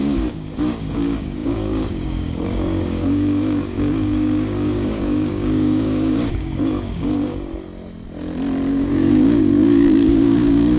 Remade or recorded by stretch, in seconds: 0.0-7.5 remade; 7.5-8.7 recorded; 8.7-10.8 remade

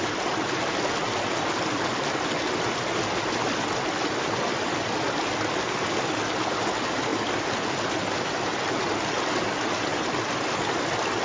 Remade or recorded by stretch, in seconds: 0.0-11.2 recorded

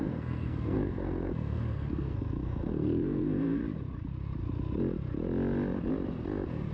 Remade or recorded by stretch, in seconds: 0.0-3.6 remade; 3.6-6.7 recorded

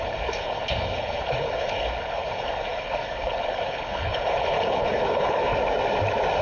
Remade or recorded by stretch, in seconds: 0.0-5.5 remade; 5.5-6.4 recorded

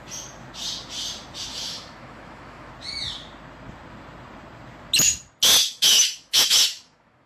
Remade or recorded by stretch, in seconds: 0.0-1.5 recorded; 1.5-2.7 remade; 2.7-5.6 recorded; 5.6-7.3 remade

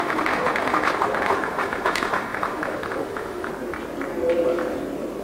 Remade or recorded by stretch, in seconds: 0.0-3.5 remade; 3.5-5.2 recorded